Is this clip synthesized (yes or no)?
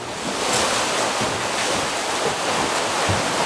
no